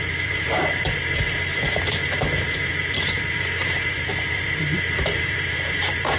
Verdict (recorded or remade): remade